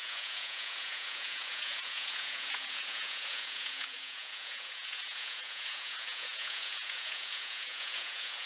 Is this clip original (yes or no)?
no